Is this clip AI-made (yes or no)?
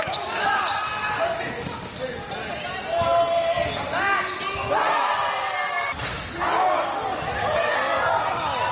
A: no